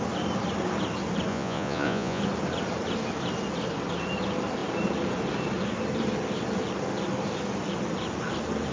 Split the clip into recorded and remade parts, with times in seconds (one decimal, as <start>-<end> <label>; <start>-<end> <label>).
0.0-1.3 recorded; 1.3-2.2 remade; 2.2-8.7 recorded